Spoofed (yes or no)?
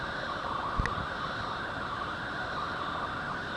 no